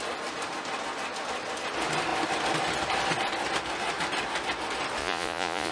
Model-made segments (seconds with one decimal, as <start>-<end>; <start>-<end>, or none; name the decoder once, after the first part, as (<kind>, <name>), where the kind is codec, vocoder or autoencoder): 5.0-5.7 (vocoder, Vocos)